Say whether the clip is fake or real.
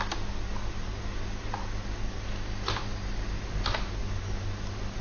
real